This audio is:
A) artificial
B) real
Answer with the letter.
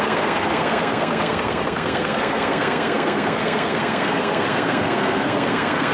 A